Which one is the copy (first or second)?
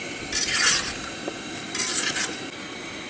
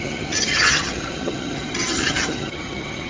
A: second